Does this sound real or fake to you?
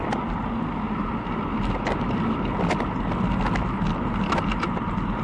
real